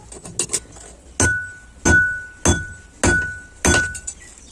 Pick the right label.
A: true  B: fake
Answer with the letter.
A